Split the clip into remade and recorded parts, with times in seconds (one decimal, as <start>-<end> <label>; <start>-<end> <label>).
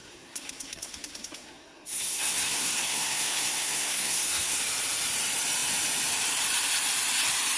0.0-4.6 remade; 4.6-7.6 recorded